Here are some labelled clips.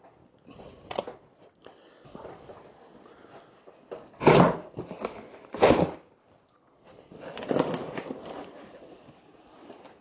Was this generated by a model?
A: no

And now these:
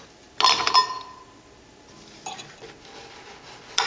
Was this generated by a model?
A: no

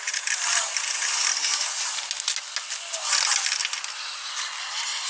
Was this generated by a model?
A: no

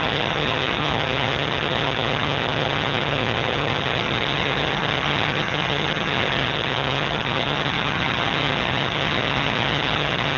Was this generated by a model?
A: yes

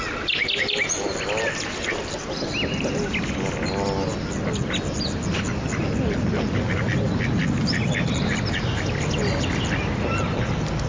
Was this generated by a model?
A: no